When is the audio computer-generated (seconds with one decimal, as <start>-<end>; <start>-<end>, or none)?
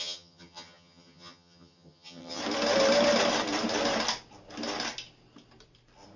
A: 0.0-2.4